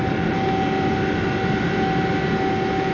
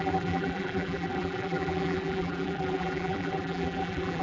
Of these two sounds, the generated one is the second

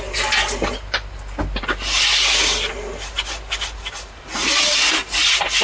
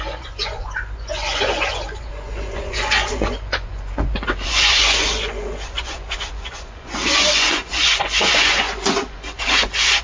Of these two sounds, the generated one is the second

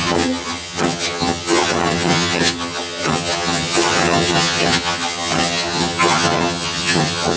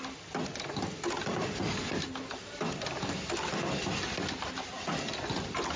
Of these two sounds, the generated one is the first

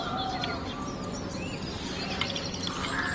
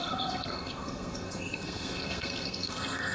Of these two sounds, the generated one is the second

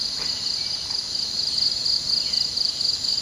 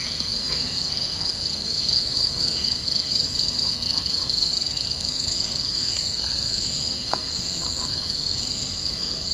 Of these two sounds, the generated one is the second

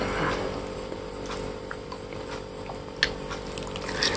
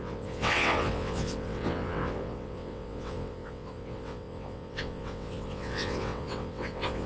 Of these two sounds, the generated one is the second